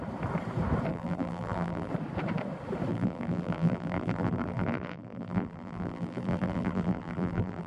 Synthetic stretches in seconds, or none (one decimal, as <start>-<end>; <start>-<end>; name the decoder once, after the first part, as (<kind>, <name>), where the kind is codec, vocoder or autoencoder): 0.9-1.9 (vocoder, BigVGAN v2); 2.9-7.7